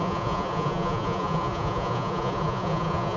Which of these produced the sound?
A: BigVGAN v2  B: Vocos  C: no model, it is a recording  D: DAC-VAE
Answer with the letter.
B